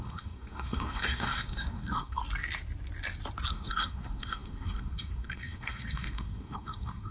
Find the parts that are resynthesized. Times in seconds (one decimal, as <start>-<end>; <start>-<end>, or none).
0.0-2.2; 3.5-7.1